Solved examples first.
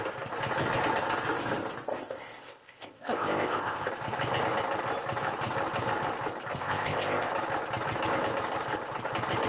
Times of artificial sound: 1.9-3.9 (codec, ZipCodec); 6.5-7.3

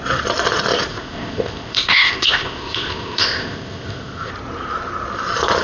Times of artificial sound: 0.9-4.3 (codec, ZipCodec)

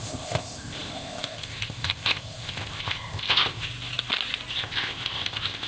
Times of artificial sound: 0.0-3.7 (codec, ZipCodec); 4.5-5.7

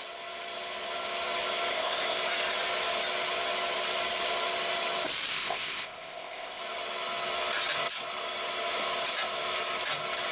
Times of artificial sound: 1.7-2.2 (codec, ZipCodec); 5.3-6.6